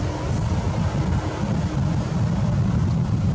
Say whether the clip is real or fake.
real